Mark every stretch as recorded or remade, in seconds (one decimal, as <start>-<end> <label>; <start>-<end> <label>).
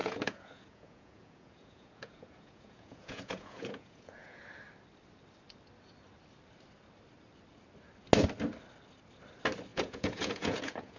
0.0-4.4 remade; 4.4-9.7 recorded; 9.7-11.0 remade